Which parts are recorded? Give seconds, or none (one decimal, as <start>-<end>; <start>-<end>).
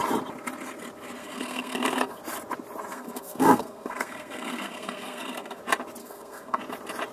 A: 0.0-1.2; 2.2-2.9; 5.6-6.0; 6.6-7.1